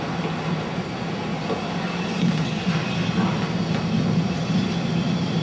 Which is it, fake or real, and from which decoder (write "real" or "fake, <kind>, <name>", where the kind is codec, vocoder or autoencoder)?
real